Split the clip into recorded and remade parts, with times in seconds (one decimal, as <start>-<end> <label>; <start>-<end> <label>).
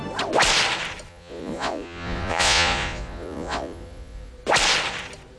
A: 0.0-1.1 recorded; 1.1-4.3 remade; 4.3-5.4 recorded